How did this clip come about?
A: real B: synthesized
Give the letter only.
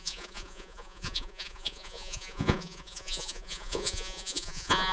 B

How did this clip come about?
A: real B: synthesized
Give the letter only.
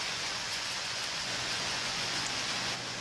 B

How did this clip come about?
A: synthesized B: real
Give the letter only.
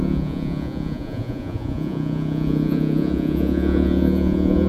A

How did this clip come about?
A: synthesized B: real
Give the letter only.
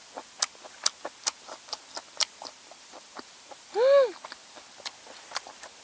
B